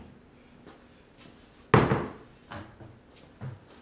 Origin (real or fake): real